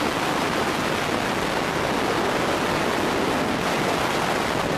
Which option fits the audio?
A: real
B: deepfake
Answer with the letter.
A